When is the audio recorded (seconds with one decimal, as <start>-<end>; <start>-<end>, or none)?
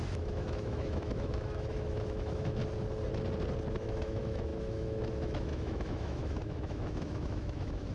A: 2.6-3.7